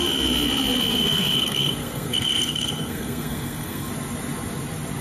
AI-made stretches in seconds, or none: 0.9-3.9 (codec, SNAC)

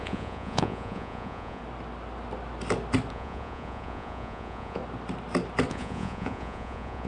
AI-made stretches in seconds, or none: 0.0-1.6 (vocoder, Vocos); 3.1-4.8; 5.7-7.1

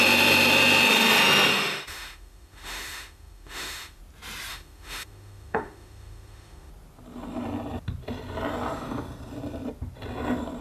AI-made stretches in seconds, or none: 1.5-4.0 (autoencoder, DAC-VAE); 4.5-6.7

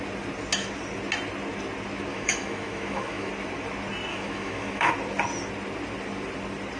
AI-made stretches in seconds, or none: 2.1-3.3 (autoencoder, DAC-VAE); 4.1-4.9

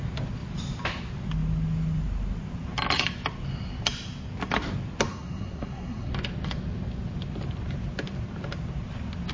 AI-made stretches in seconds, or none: 5.1-6.1 (codec, SNAC)

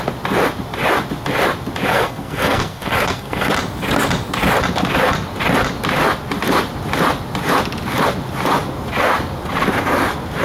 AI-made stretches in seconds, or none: 1.9-3.5 (codec, SNAC)

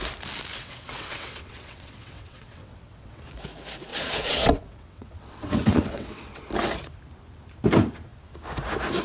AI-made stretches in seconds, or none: 0.5-3.2 (vocoder, WaveNeXt); 3.9-6.4